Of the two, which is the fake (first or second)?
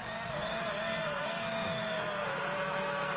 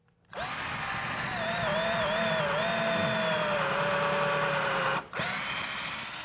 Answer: first